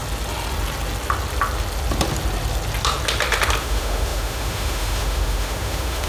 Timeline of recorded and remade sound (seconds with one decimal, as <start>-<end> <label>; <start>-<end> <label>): 0.0-3.6 recorded; 3.6-6.1 remade